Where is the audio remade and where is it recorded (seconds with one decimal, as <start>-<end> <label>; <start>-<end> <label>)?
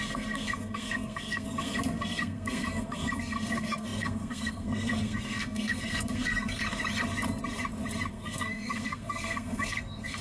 0.0-6.6 remade; 6.6-8.1 recorded; 8.1-10.2 remade